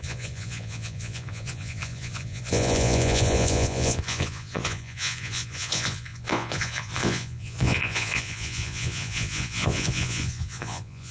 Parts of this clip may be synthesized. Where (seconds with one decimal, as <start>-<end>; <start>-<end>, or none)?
0.0-11.1